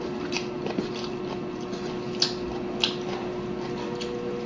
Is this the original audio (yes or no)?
yes